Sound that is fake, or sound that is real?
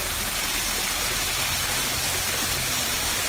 real